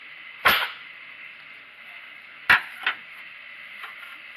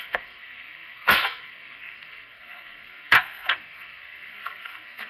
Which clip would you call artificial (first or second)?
second